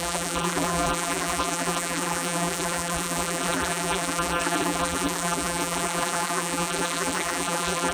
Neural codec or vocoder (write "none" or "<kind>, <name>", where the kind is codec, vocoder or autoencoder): vocoder, BigVGAN v2